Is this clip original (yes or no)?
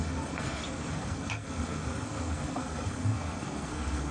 no